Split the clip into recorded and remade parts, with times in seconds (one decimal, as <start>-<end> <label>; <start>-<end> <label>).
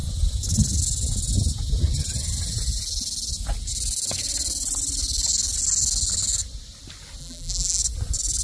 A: 0.0-7.2 recorded; 7.2-7.8 remade; 7.8-8.4 recorded